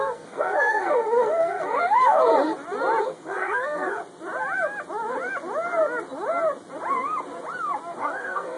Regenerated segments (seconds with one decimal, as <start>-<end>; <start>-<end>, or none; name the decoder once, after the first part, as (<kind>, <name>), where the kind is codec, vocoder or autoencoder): 0.0-2.3 (codec, SNAC); 3.0-4.0; 8.0-8.6